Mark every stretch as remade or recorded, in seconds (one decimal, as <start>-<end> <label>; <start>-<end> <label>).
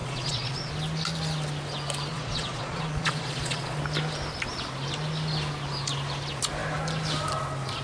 0.0-0.7 remade; 0.7-2.1 recorded; 2.1-3.8 remade; 3.8-7.8 recorded